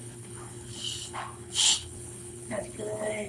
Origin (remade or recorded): remade